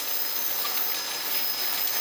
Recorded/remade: recorded